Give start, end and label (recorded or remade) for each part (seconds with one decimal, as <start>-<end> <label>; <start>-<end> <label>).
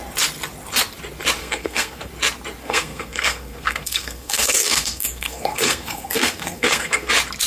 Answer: 0.0-1.4 recorded; 1.4-2.1 remade; 2.1-2.6 recorded; 2.6-7.1 remade; 7.1-7.5 recorded